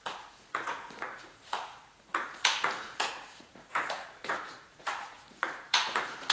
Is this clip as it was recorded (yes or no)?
no